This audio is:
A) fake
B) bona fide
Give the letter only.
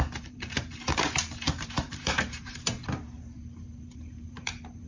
A